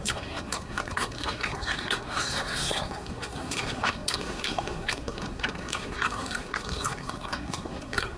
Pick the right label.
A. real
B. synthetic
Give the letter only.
B